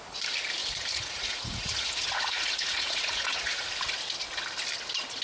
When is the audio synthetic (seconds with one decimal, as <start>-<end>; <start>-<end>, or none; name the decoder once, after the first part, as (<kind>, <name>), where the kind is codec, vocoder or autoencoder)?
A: 0.6-3.7 (vocoder, Vocos)